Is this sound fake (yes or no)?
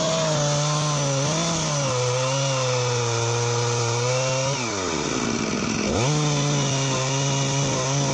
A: no